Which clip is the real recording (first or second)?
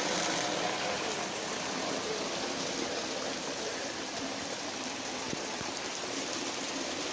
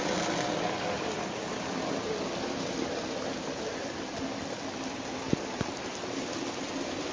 second